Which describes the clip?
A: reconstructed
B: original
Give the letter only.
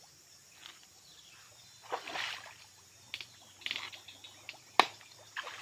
B